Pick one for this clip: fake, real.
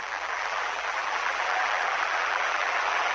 fake